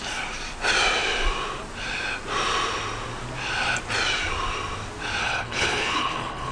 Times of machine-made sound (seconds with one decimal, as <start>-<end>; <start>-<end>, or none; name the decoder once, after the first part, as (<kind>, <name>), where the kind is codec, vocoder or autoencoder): 5.2-6.5 (codec, HILCodec)